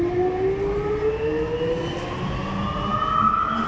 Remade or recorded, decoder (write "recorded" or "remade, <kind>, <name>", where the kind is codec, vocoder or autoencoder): recorded